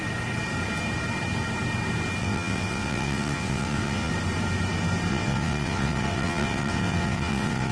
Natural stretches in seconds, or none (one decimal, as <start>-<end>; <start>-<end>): 0.0-2.2; 4.1-5.1